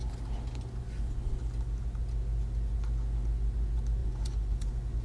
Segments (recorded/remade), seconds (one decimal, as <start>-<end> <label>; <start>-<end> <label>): 0.0-4.0 recorded; 4.0-5.0 remade